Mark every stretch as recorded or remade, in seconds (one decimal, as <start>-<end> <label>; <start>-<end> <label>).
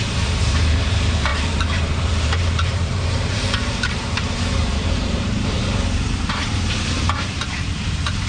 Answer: 0.0-8.3 remade